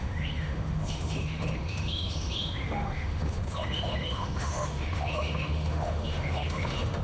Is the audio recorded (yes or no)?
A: no